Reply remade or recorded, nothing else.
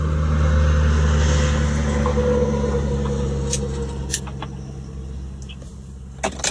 recorded